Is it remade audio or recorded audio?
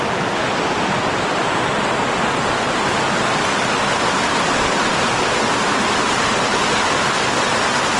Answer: recorded